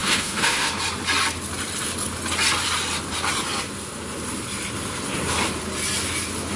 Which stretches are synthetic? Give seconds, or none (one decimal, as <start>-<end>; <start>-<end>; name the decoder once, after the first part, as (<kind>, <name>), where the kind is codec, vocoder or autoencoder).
0.0-0.7 (autoencoder, DAC-VAE)